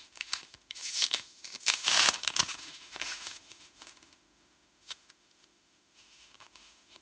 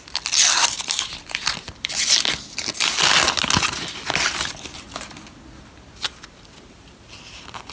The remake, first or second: first